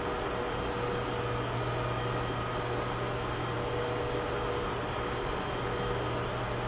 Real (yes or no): yes